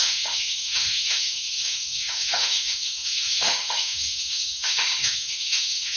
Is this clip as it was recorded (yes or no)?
no